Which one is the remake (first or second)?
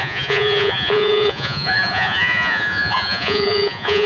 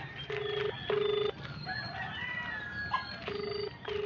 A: first